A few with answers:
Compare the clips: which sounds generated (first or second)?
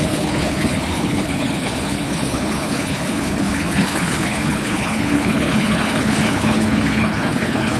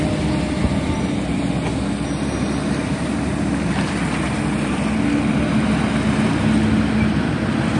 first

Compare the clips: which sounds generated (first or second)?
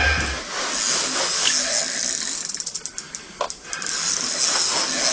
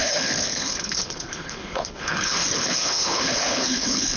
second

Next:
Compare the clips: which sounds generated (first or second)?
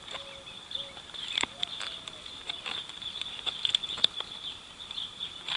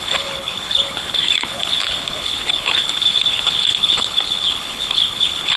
second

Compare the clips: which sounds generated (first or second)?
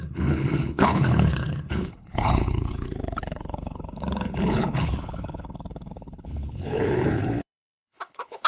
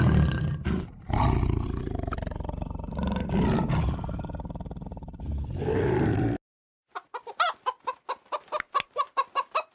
first